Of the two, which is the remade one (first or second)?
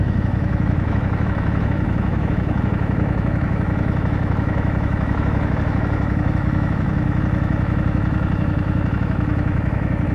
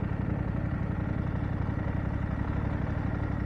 first